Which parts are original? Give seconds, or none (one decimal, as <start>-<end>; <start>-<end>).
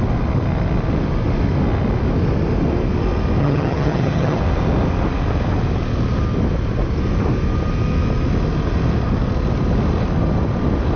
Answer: 0.0-3.4; 4.4-11.0